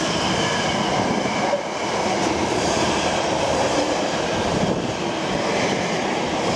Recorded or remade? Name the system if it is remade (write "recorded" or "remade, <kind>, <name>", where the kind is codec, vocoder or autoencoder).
recorded